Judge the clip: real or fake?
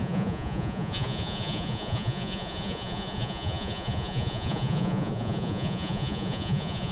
fake